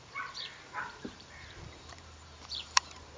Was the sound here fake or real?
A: fake